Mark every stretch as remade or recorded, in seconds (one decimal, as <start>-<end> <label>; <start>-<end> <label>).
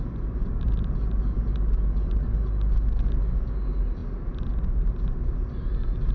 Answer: 0.0-6.1 recorded